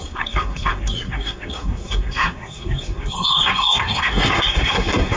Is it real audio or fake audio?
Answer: fake